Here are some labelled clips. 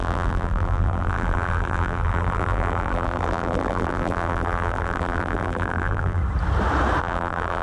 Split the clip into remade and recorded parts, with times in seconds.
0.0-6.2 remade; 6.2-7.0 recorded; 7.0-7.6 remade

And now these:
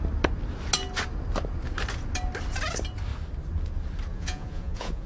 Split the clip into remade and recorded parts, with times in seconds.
0.0-4.1 recorded; 4.1-5.1 remade

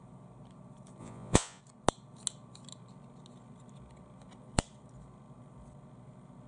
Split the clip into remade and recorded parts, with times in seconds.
0.0-1.0 recorded; 1.0-1.6 remade; 1.6-6.5 recorded

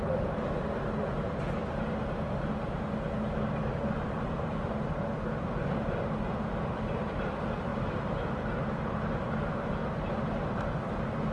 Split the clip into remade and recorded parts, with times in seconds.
0.0-3.7 recorded; 3.7-4.5 remade; 4.5-7.7 recorded; 7.7-9.7 remade; 9.7-11.3 recorded

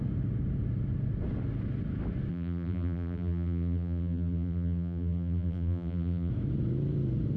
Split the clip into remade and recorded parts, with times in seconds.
0.0-2.3 recorded; 2.3-6.3 remade; 6.3-7.4 recorded